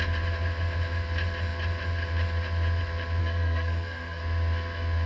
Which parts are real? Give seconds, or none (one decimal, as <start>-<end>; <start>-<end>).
0.0-3.2; 4.2-5.1